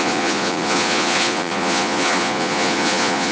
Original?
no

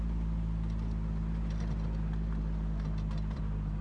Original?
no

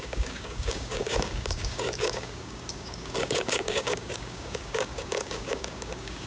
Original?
no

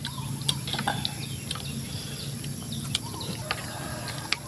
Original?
yes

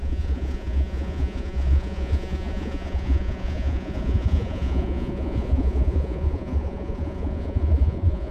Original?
no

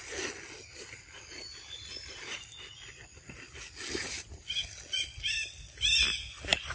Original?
yes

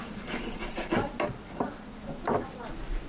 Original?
yes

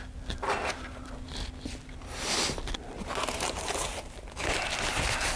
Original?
yes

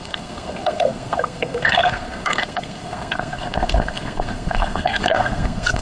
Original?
no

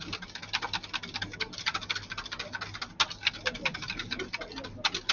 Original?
yes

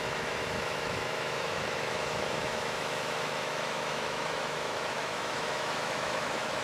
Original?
no